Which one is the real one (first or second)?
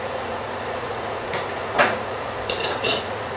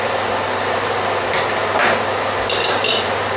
second